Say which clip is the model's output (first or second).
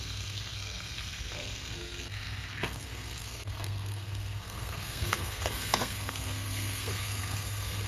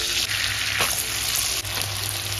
first